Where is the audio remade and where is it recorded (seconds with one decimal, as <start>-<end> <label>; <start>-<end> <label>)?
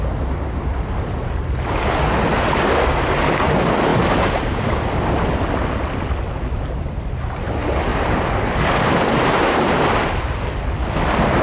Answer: 0.0-7.9 recorded; 7.9-9.4 remade; 9.4-11.4 recorded